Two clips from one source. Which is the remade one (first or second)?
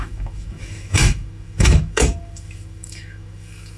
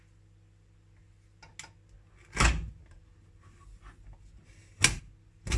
first